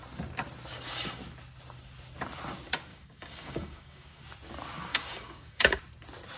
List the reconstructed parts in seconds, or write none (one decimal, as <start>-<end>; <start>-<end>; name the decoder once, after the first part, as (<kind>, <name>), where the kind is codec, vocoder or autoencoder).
0.7-1.2 (codec, DAC); 2.9-4.2; 4.9-5.8